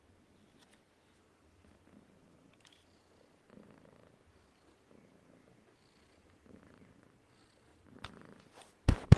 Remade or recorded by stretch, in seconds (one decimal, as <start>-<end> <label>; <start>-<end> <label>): 0.0-9.2 recorded